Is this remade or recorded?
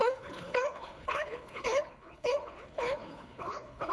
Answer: remade